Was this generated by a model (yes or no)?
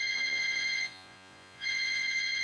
yes